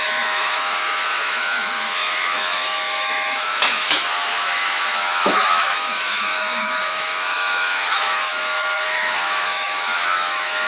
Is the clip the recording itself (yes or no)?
no